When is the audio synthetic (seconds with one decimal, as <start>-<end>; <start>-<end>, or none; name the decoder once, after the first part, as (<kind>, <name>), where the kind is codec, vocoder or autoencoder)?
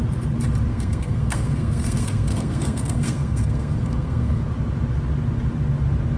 0.7-4.4 (codec, SNAC)